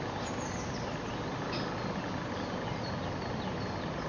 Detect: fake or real real